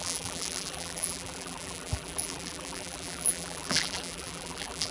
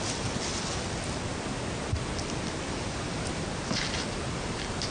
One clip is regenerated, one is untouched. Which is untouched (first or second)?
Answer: second